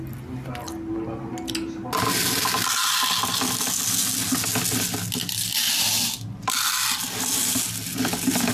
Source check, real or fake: real